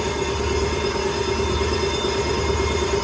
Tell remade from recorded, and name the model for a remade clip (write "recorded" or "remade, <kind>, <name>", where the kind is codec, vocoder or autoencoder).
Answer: recorded